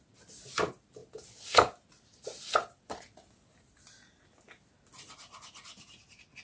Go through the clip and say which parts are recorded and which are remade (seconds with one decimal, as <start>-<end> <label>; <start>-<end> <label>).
0.0-6.4 recorded

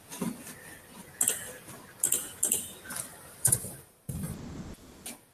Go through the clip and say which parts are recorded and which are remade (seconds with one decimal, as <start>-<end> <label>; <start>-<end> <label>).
0.0-3.1 recorded; 3.1-4.3 remade; 4.3-5.3 recorded

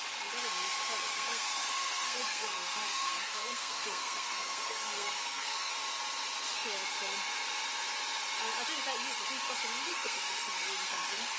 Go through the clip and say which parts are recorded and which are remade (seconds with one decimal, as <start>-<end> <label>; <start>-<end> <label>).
0.0-1.1 recorded; 1.1-5.7 remade; 5.7-9.9 recorded; 9.9-11.4 remade

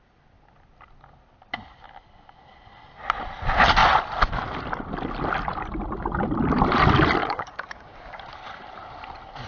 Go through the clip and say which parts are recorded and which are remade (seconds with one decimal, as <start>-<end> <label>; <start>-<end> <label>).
0.0-7.2 recorded; 7.2-8.2 remade; 8.2-9.5 recorded

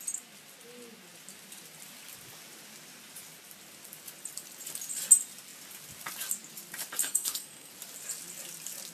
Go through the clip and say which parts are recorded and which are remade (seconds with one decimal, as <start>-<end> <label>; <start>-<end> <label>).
0.0-7.0 recorded; 7.0-7.7 remade; 7.7-8.9 recorded

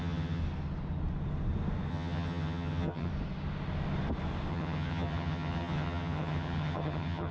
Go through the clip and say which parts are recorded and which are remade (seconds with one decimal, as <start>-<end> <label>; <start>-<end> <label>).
0.0-0.4 remade; 0.4-1.9 recorded; 1.9-3.1 remade; 3.1-4.5 recorded; 4.5-7.3 remade